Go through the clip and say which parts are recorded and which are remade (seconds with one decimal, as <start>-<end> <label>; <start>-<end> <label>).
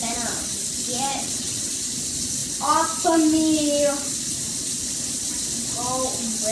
0.0-1.1 recorded; 1.1-1.7 remade; 1.7-6.5 recorded